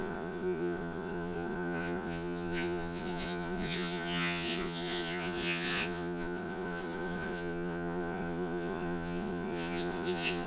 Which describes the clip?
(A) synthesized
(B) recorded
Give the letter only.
A